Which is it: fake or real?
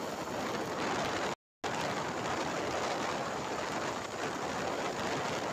real